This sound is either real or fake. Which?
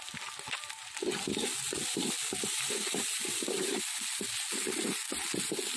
real